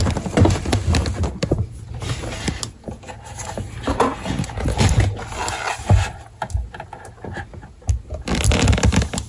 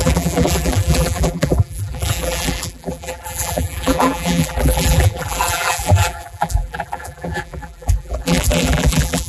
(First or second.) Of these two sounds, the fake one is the second